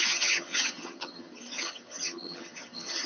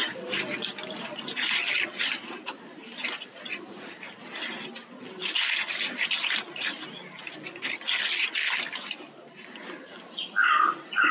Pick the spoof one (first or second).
first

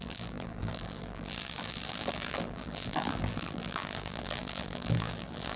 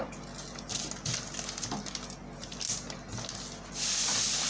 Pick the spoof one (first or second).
first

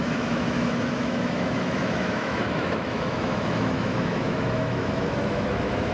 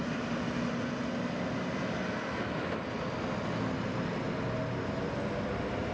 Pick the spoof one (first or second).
first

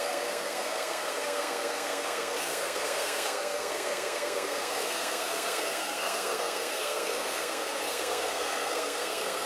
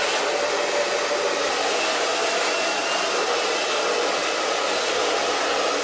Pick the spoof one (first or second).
first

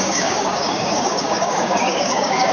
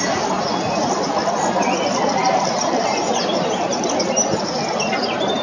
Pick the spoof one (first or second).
first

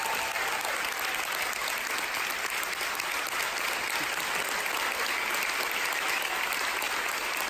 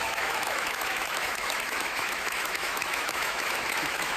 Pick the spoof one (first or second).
second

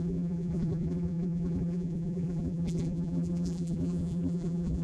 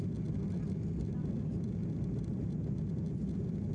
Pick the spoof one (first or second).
first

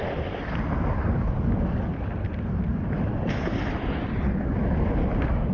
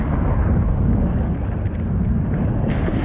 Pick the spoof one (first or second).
first